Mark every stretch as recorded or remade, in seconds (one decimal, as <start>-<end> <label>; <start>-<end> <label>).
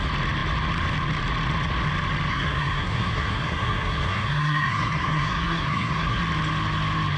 0.0-2.3 recorded; 2.3-6.2 remade; 6.2-7.2 recorded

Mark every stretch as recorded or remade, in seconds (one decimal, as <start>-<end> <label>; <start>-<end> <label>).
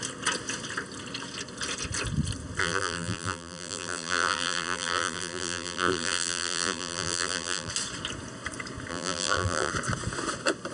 0.0-2.6 recorded; 2.6-7.7 remade; 7.7-8.9 recorded; 8.9-9.7 remade; 9.7-10.7 recorded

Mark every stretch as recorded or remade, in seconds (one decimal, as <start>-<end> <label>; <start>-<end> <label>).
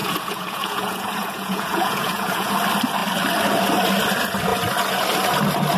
0.0-2.5 remade; 2.5-5.8 recorded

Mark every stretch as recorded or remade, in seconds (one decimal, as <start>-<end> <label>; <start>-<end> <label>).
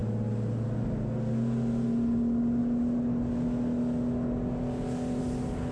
0.0-5.7 recorded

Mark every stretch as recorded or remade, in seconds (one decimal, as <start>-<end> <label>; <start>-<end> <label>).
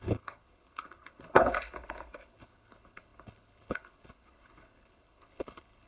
0.0-5.9 remade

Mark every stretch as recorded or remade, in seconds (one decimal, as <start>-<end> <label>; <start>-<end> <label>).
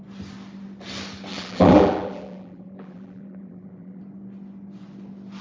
0.0-1.3 recorded; 1.3-4.0 remade; 4.0-5.4 recorded